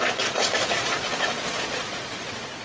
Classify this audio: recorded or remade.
remade